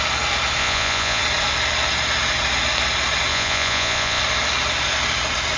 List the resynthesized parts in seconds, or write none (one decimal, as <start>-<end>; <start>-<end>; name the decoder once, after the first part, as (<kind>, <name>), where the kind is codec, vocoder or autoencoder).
0.6-1.2 (vocoder, Vocos); 3.3-4.2